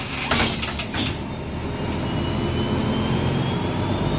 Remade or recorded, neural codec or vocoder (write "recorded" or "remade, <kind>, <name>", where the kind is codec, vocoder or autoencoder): recorded